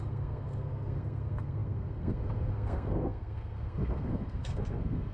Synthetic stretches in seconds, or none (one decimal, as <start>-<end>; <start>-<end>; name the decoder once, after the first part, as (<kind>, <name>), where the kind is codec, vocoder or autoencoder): 0.0-5.1 (codec, SNAC)